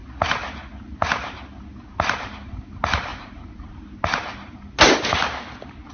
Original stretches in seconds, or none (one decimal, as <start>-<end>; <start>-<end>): 0.0-5.9